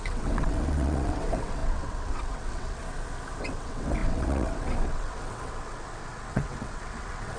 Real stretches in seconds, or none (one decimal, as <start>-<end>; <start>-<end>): 2.8-3.4